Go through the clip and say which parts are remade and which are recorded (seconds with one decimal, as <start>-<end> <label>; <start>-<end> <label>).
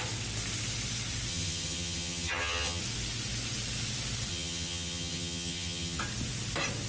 0.0-1.3 recorded; 1.3-2.8 remade; 2.8-4.3 recorded; 4.3-6.0 remade; 6.0-6.9 recorded